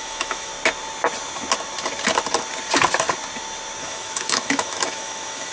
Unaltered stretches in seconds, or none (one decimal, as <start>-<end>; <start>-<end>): 0.5-3.8